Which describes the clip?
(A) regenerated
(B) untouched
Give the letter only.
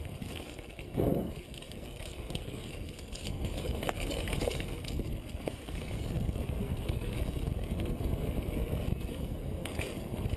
A